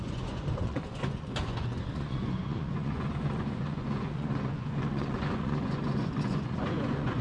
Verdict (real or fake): fake